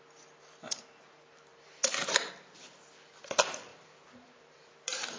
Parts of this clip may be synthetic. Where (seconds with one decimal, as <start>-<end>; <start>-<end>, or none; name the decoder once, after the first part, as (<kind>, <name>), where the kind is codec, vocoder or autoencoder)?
1.8-2.3 (vocoder, BigVGAN v2); 3.7-4.7